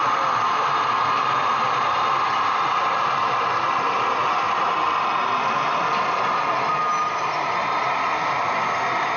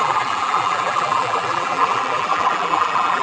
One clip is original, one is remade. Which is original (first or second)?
first